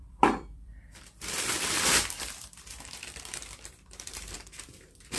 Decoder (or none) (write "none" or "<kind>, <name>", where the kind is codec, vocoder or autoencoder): vocoder, BigVGAN v2